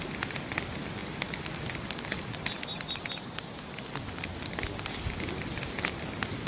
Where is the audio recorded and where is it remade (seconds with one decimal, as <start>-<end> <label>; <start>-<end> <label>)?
0.0-6.5 recorded